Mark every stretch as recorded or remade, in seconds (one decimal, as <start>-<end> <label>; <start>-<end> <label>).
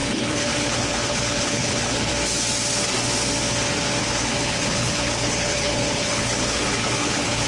0.0-2.1 remade; 2.1-4.0 recorded; 4.0-7.5 remade